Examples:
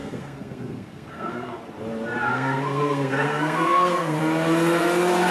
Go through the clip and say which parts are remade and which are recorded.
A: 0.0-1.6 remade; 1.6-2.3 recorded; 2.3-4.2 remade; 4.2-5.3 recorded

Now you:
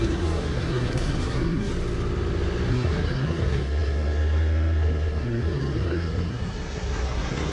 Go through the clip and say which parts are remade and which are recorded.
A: 0.0-1.7 remade; 1.7-2.7 recorded; 2.7-7.5 remade